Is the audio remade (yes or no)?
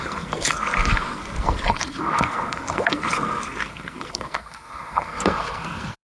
yes